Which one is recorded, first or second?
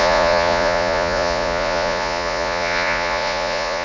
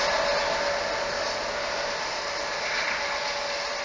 second